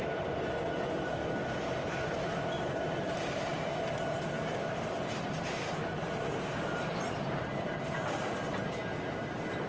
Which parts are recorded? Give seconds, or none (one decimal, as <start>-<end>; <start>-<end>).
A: 1.2-1.8; 3.5-4.4